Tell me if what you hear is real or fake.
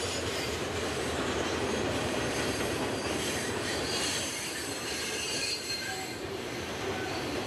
fake